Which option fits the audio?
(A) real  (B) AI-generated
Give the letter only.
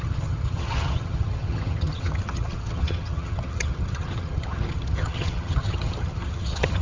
B